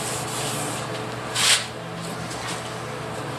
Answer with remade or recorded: recorded